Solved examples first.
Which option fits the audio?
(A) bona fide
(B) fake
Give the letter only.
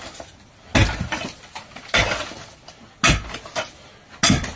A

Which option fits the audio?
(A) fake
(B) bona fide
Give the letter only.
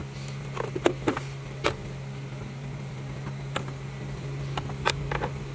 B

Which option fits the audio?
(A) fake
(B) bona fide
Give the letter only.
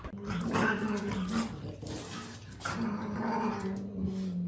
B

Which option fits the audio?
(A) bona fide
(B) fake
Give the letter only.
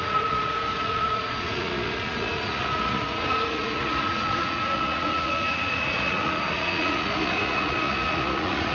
B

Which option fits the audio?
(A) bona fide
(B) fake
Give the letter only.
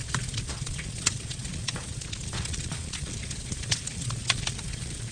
B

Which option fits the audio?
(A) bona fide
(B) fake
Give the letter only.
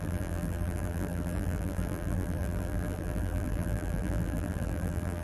B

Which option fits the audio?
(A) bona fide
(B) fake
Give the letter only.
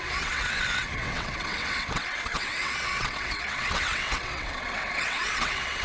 B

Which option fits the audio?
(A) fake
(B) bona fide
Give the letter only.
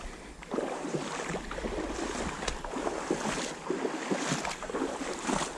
B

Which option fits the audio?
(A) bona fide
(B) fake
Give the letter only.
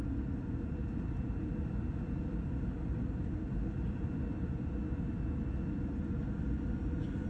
A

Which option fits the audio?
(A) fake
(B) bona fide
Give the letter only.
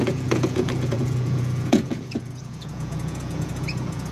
A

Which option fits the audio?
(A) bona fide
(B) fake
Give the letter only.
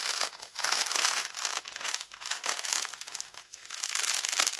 B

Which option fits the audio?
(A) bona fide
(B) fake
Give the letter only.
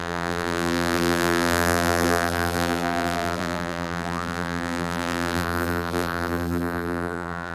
B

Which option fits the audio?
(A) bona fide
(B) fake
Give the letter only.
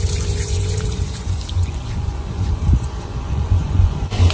B